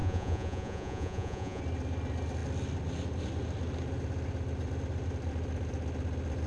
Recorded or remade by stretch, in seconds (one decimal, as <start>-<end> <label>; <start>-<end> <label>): 0.0-1.6 remade; 1.6-6.5 recorded

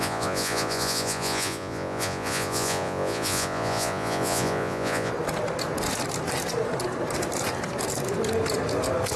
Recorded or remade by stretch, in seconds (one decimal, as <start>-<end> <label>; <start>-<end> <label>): 0.0-5.1 remade; 5.1-9.2 recorded